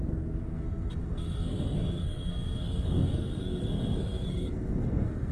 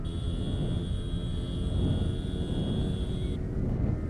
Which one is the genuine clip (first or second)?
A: second